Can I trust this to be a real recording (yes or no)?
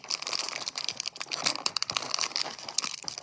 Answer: no